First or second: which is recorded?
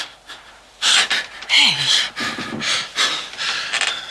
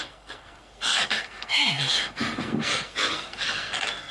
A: first